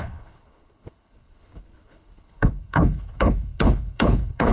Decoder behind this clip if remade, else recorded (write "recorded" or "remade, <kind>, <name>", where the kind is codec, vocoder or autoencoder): remade, codec, HILCodec